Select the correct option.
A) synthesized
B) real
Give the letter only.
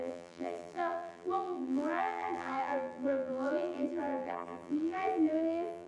A